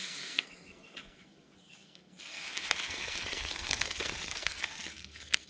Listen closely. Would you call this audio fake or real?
fake